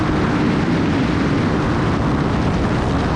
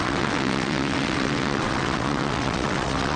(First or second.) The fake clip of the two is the second